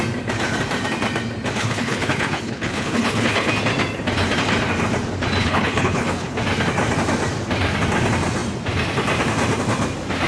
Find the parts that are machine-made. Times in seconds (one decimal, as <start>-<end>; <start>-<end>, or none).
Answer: 1.6-3.5; 5.4-6.4